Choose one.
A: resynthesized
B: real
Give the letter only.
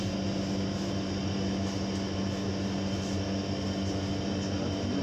B